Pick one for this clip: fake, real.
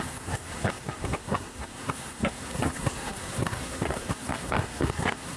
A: fake